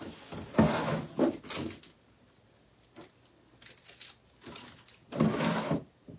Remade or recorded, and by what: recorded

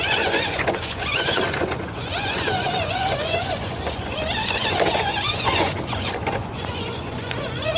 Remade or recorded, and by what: remade, vocoder, Vocos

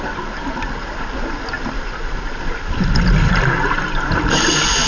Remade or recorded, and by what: recorded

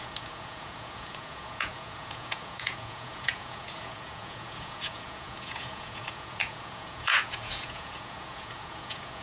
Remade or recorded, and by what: remade, vocoder, Vocos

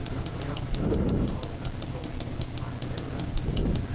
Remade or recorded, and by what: recorded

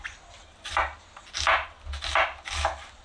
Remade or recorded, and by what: recorded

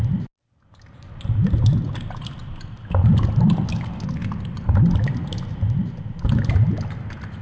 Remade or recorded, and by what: recorded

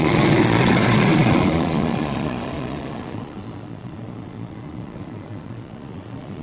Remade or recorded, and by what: remade, vocoder, Vocos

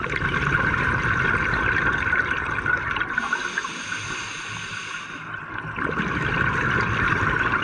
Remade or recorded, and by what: recorded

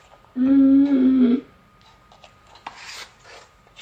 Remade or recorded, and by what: recorded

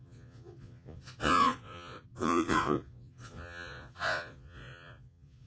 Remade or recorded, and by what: remade, vocoder, Vocos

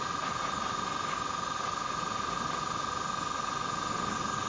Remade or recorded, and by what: recorded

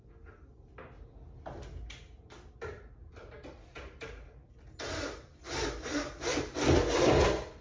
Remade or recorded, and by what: recorded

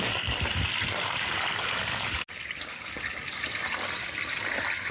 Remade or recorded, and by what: recorded